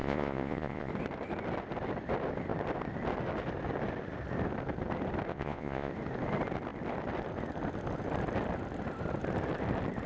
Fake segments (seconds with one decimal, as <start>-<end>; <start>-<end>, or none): 0.0-0.9; 5.3-5.9